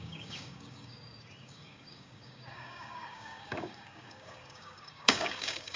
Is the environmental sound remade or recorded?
remade